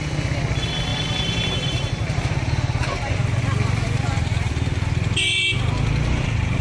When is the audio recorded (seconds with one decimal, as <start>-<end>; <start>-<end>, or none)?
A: 0.0-0.9; 3.4-6.6